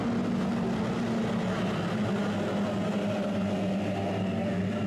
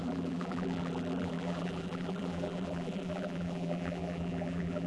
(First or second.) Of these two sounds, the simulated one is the second